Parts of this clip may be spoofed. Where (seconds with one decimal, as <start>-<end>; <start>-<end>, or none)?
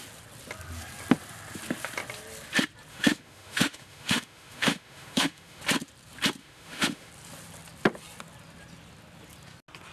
2.9-5.6; 6.4-7.1